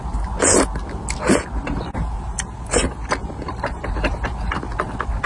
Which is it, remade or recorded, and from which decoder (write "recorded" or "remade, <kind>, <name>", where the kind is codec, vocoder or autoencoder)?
recorded